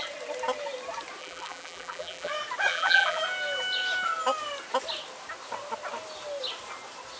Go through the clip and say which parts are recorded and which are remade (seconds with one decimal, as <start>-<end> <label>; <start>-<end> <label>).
0.0-1.2 recorded; 1.2-2.3 remade; 2.3-2.7 recorded; 2.7-3.2 remade; 3.2-7.2 recorded